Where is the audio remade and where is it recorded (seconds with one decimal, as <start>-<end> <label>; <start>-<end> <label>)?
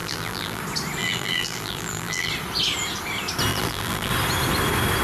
0.0-0.6 remade; 0.6-1.0 recorded; 1.0-2.3 remade; 2.3-3.5 recorded; 3.5-4.1 remade; 4.1-5.0 recorded